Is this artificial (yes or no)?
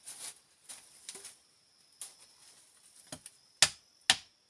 no